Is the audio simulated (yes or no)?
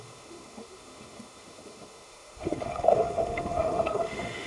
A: yes